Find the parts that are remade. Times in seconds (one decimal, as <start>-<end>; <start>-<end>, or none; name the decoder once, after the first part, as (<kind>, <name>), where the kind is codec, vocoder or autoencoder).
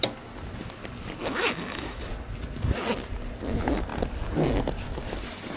1.2-2.0 (autoencoder, DAC-VAE)